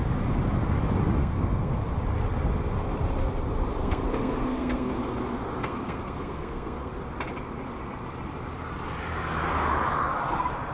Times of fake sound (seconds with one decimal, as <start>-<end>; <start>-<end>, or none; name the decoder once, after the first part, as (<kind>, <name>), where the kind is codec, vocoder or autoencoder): 1.2-1.7 (codec, SNAC); 3.8-4.9; 5.6-6.9